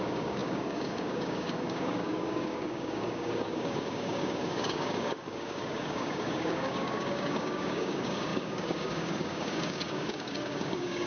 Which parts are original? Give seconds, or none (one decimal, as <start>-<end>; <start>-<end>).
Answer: none